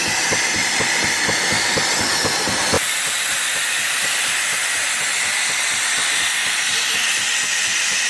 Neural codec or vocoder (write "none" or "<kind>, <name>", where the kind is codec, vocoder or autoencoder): none